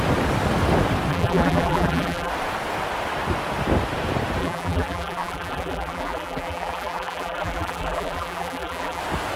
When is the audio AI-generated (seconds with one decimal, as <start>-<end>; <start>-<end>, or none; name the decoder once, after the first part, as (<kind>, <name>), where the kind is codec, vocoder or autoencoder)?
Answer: 1.1-2.3 (vocoder, BigVGAN v2); 4.4-9.0